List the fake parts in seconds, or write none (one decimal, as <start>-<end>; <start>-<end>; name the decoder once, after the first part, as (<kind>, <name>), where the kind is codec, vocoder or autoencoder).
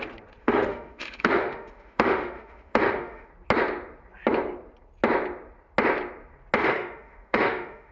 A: 0.4-3.3 (autoencoder, DAC-VAE); 6.6-7.9